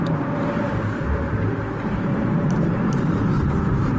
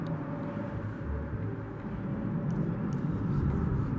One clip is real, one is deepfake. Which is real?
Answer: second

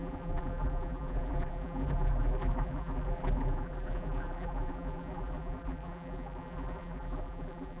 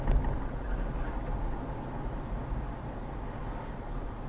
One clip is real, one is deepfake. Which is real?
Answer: second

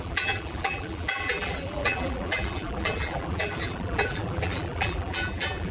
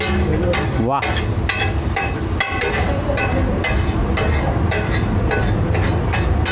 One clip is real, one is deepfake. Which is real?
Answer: second